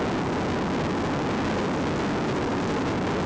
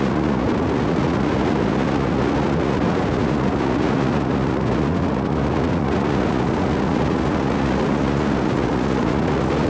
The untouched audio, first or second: first